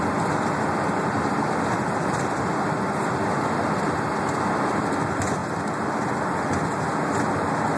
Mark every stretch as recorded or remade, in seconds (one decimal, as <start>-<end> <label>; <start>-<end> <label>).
0.0-7.8 recorded